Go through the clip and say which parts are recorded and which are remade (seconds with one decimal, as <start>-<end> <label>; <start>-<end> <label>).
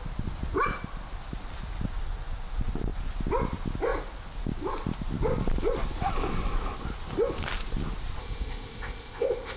0.0-8.2 recorded; 8.2-9.6 remade